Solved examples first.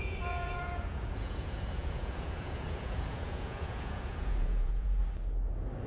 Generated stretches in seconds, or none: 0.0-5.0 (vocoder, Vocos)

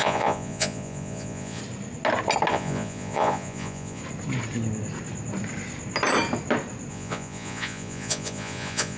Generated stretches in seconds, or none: 0.0-1.6 (vocoder, Vocos); 2.5-4.0; 6.9-9.0

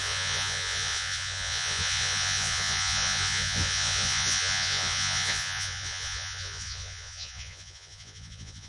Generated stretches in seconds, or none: 0.0-8.7 (vocoder, Vocos)

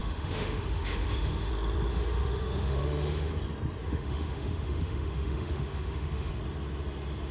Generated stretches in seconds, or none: 0.0-1.5 (autoencoder, DAC-VAE); 1.9-3.3; 3.8-6.3

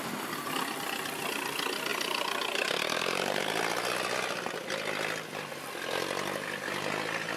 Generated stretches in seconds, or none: 1.9-3.4 (vocoder, BigVGAN v2)